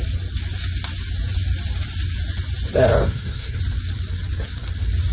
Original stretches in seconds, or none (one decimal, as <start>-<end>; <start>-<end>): 0.0-3.0; 3.6-5.1